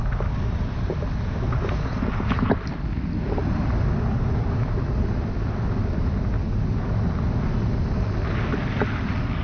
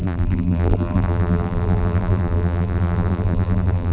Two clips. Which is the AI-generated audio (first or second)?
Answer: second